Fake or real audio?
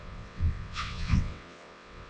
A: fake